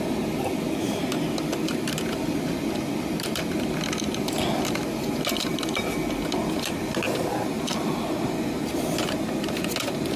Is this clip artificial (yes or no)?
no